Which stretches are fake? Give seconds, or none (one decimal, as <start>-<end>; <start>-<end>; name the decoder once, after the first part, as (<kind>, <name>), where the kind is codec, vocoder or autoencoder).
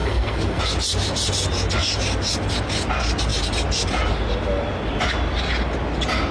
0.0-0.6 (codec, SNAC)